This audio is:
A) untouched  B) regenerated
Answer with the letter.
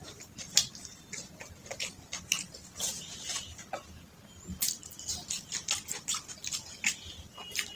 A